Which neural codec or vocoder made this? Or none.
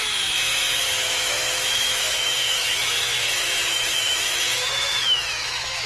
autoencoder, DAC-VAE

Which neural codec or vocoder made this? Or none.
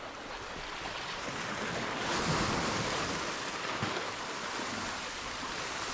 none